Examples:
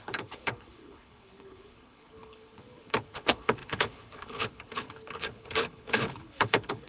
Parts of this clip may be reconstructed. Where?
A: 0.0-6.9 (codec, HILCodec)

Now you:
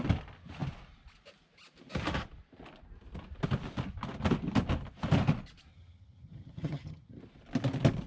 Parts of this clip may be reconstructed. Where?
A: 5.7-7.2 (vocoder, HiFi-GAN)

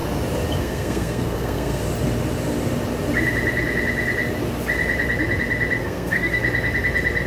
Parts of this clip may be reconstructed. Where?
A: 0.6-1.8 (codec, SNAC); 5.8-6.4

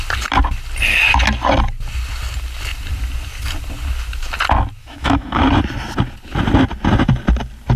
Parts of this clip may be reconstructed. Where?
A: 4.8-5.4 (autoencoder, DAC-VAE)

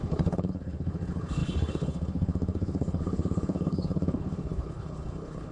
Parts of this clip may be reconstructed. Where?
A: 0.0-5.5 (codec, HILCodec)

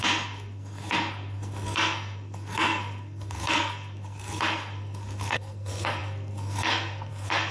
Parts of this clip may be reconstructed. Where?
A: 0.0-7.5 (codec, SNAC)

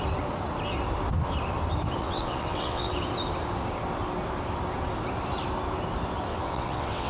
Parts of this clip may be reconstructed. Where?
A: 2.0-2.9 (vocoder, WaveNeXt); 6.3-7.1